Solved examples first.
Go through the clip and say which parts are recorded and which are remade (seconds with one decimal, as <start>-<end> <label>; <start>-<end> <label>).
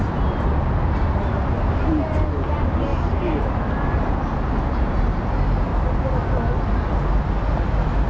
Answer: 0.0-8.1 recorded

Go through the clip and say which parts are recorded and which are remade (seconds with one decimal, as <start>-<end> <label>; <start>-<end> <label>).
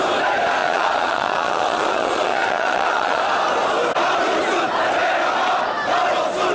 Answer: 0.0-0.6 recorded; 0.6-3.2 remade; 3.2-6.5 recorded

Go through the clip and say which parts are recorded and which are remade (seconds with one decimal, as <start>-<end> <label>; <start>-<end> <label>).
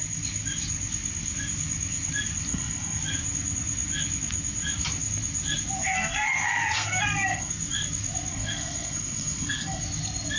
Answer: 0.0-2.5 recorded; 2.5-3.0 remade; 3.0-5.8 recorded; 5.8-7.5 remade; 7.5-8.3 recorded; 8.3-9.8 remade; 9.8-10.4 recorded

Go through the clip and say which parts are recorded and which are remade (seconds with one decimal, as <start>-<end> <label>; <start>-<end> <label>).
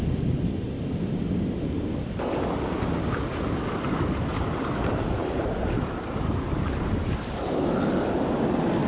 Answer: 0.0-4.3 recorded; 4.3-7.5 remade; 7.5-8.9 recorded